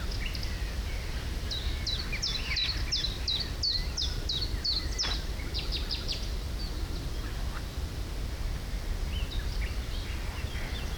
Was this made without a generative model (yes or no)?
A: yes